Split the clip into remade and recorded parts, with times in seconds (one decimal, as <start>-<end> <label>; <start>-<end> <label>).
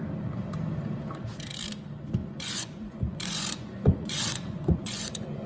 0.0-2.2 recorded; 2.2-5.5 remade